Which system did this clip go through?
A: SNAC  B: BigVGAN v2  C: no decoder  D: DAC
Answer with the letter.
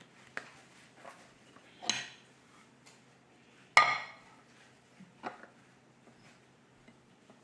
C